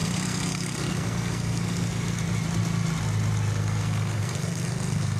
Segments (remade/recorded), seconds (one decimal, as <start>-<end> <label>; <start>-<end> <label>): 0.0-2.2 remade; 2.2-3.6 recorded; 3.6-5.2 remade